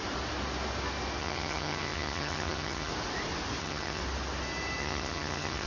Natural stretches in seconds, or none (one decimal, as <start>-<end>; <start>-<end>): 0.0-1.2; 2.9-3.6; 4.0-4.8